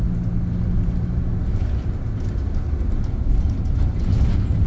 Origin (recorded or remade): recorded